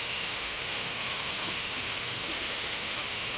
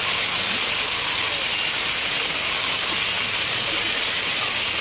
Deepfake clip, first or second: first